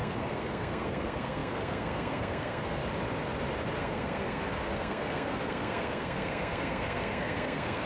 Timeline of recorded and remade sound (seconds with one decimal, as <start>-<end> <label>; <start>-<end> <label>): 0.0-2.8 remade; 2.8-3.8 recorded; 3.8-7.9 remade